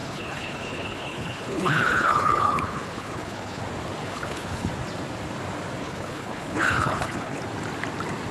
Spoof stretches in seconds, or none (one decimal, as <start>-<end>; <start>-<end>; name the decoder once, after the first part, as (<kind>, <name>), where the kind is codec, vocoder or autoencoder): 0.0-3.6 (codec, HILCodec); 4.0-4.7; 5.8-7.4